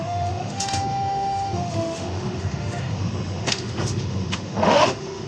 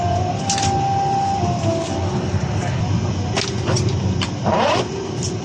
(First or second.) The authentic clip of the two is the second